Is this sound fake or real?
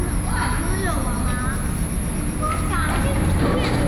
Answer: real